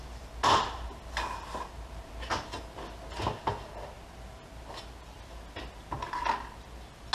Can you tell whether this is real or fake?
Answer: real